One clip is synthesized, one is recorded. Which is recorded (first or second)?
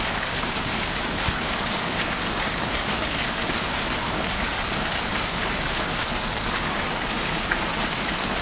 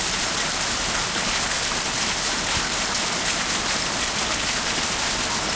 second